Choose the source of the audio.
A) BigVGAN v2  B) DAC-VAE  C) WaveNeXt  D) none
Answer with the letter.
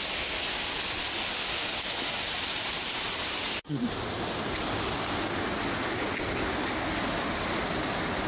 D